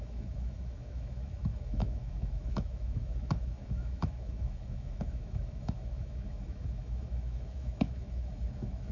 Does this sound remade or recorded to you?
remade